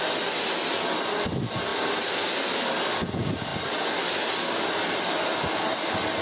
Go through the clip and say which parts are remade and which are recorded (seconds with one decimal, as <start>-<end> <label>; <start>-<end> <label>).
0.0-6.2 recorded